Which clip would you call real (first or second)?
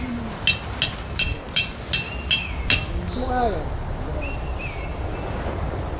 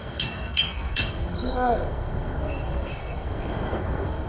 first